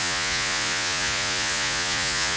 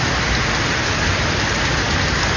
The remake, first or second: first